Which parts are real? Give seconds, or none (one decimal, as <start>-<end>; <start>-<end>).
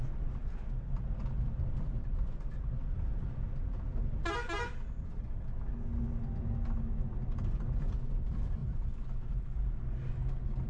0.0-8.6; 10.1-10.7